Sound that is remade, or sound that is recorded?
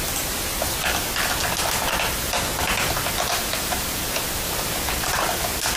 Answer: recorded